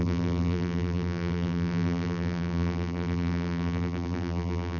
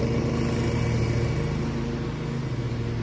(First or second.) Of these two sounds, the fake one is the first